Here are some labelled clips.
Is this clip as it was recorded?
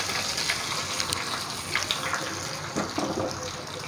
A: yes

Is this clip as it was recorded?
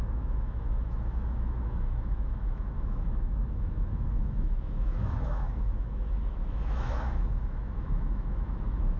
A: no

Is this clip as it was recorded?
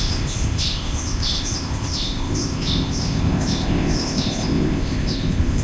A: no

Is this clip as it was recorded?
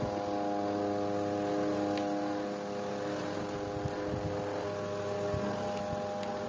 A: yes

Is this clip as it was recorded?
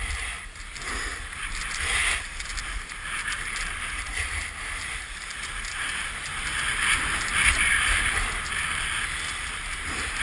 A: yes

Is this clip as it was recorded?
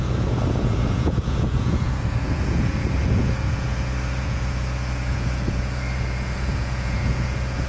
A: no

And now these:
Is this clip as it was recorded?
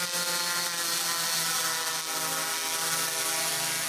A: yes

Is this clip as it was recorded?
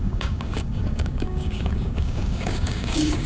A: no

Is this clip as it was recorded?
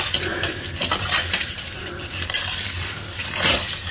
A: yes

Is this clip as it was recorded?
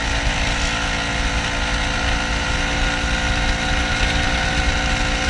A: yes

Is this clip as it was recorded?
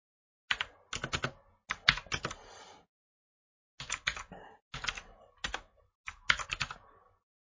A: yes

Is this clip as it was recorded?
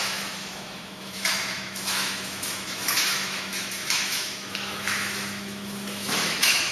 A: no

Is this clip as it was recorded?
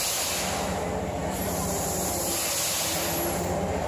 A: yes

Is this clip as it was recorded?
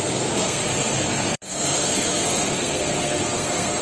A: no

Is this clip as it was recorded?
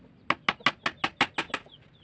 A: yes